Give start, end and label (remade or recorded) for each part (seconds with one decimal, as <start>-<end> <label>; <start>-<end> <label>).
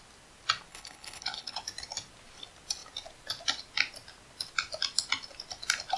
0.0-0.7 recorded; 0.7-1.6 remade; 1.6-6.0 recorded